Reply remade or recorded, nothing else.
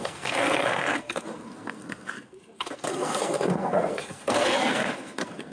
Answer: remade